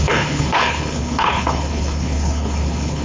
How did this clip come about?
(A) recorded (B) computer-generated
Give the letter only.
B